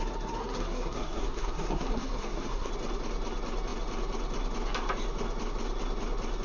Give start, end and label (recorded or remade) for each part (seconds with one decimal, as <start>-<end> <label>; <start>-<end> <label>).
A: 0.0-0.4 recorded; 0.4-2.7 remade; 2.7-6.4 recorded